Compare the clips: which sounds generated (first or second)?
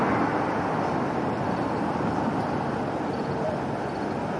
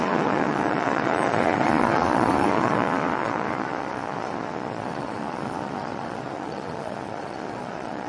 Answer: second